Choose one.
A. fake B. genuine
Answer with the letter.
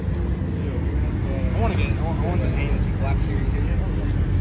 B